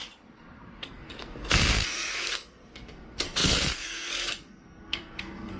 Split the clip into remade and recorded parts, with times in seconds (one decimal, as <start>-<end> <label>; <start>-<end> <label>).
0.0-0.8 recorded; 0.8-5.6 remade